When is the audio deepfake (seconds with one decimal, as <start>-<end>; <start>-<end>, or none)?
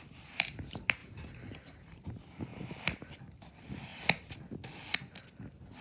1.0-2.1